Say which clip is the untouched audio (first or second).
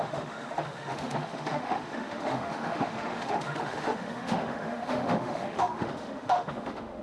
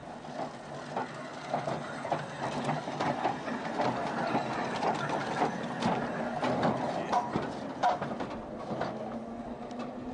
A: second